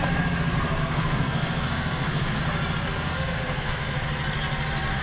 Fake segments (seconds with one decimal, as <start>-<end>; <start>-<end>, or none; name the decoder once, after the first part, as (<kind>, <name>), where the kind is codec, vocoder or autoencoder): 0.8-2.4 (codec, SNAC); 2.9-4.1